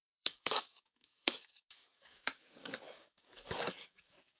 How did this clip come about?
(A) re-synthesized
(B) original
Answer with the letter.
A